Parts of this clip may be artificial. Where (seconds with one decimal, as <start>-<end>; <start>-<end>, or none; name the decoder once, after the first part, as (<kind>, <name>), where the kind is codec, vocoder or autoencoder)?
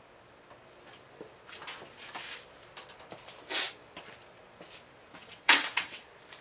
5.2-6.0 (vocoder, WaveNeXt)